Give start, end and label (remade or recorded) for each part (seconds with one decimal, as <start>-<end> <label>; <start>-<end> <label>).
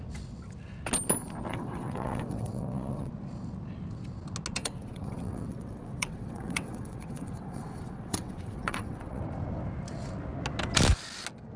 0.0-1.5 recorded; 1.5-3.1 remade; 3.1-4.6 recorded; 4.6-9.2 remade; 9.2-11.6 recorded